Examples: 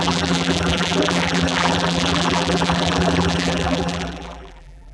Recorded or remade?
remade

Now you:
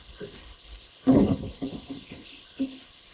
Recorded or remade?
remade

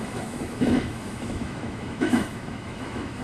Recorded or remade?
remade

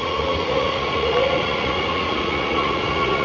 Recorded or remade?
remade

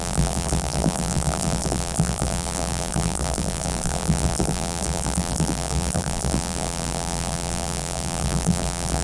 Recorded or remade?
remade